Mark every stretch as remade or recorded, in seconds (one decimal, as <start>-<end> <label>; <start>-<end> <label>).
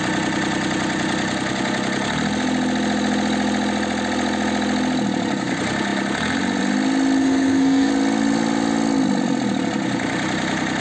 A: 0.0-7.2 recorded; 7.2-7.9 remade; 7.9-10.8 recorded